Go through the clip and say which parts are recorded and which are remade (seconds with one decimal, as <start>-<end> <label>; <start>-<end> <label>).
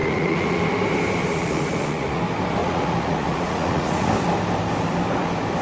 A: 0.0-0.6 remade; 0.6-1.2 recorded; 1.2-2.2 remade; 2.2-2.6 recorded; 2.6-4.1 remade; 4.1-5.6 recorded